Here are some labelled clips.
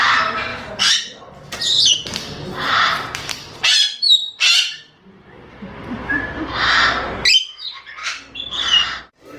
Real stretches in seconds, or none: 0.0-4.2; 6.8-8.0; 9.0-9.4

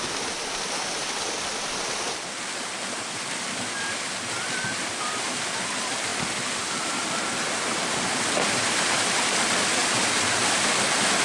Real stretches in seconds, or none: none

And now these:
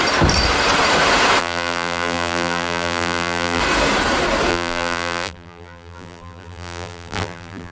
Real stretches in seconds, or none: 0.0-1.4; 3.6-4.5